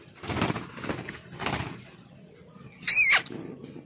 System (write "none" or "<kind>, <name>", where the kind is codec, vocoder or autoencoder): none